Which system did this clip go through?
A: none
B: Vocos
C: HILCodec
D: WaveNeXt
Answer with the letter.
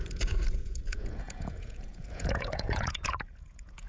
B